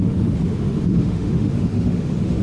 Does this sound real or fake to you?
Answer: fake